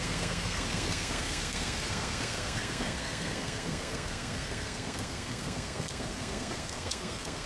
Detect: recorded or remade remade